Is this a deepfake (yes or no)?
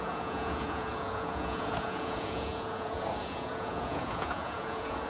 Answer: yes